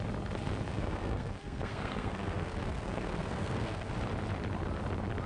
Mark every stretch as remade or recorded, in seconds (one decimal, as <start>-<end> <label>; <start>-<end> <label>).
0.0-0.7 recorded; 0.7-3.9 remade; 3.9-5.3 recorded